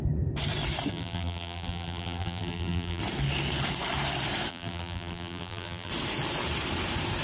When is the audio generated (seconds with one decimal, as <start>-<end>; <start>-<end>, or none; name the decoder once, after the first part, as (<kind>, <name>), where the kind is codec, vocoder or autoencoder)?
0.9-3.0 (vocoder, BigVGAN v2); 4.5-5.9